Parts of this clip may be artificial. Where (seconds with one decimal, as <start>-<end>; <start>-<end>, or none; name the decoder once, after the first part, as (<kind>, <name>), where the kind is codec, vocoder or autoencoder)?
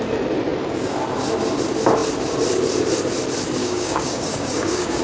3.6-5.0 (codec, DAC)